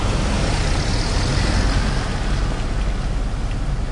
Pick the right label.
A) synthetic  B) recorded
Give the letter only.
B